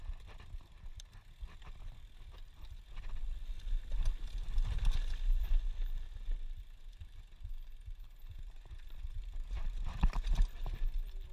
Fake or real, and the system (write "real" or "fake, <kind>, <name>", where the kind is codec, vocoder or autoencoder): real